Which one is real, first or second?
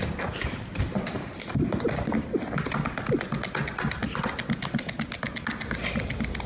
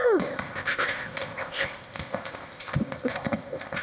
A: first